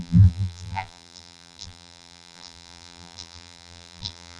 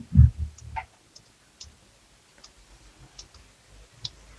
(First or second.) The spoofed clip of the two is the first